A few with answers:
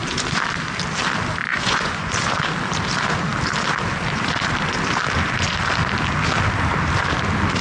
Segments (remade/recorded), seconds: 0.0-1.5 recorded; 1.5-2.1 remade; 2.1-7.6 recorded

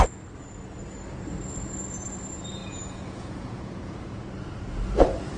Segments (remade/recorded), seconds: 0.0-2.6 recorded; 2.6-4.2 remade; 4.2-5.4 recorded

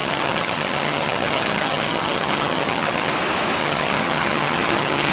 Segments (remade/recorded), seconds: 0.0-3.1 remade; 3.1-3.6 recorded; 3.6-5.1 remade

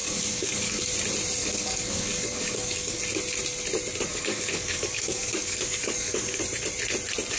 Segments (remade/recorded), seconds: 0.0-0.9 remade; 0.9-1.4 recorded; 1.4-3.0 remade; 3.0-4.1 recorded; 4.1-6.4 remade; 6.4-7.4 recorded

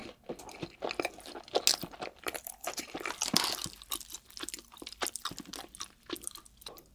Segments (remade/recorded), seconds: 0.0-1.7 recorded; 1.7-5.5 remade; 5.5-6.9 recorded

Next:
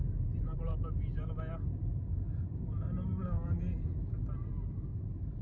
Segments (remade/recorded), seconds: 0.0-1.5 remade; 1.5-1.9 recorded; 1.9-5.4 remade

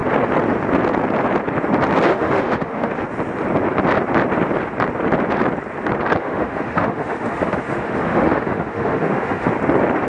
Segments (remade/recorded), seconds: 0.0-2.1 recorded; 2.1-2.9 remade; 2.9-6.2 recorded; 6.2-9.5 remade; 9.5-10.1 recorded